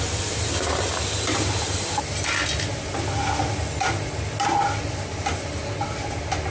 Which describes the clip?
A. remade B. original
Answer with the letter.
B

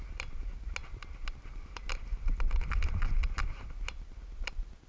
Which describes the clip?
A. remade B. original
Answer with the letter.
B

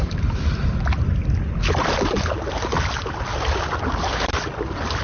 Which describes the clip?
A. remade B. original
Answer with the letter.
B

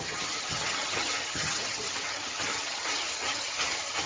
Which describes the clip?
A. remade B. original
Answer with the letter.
A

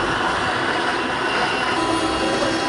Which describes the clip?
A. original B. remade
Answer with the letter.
A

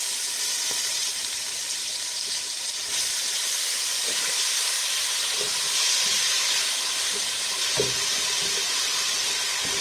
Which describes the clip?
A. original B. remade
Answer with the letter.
B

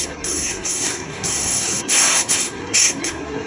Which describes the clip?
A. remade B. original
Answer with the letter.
A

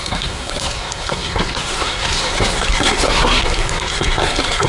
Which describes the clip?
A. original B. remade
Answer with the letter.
B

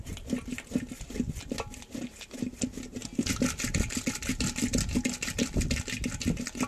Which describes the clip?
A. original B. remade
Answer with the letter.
A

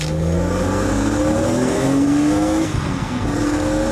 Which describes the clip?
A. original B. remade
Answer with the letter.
B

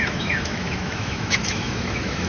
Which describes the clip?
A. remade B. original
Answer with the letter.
A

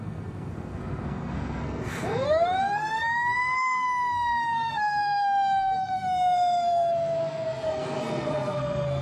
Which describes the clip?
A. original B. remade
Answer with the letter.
B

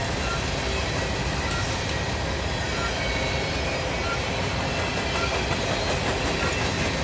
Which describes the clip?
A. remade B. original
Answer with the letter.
B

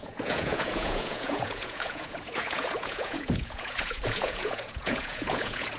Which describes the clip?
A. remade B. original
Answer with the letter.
A